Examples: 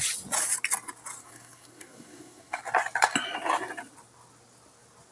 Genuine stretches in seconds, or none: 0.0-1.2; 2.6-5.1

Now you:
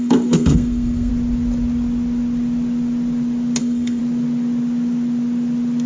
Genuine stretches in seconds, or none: 1.1-3.6; 4.0-5.9

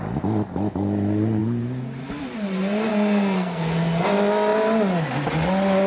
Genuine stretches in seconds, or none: 0.0-2.9; 3.7-5.9

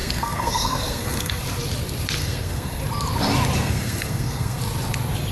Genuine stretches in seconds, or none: 1.4-2.2; 2.8-3.6; 4.6-5.3

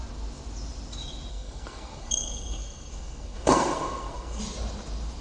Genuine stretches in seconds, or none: 0.0-1.3; 4.4-5.2

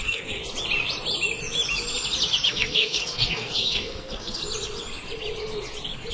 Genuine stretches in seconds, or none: 0.4-2.5; 4.4-6.1